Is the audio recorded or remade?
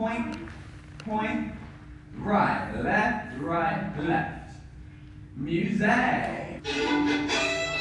recorded